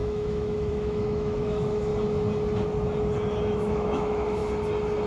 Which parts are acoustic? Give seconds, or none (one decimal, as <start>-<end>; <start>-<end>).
1.9-3.4; 4.4-5.1